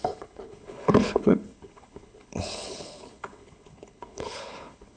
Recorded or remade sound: remade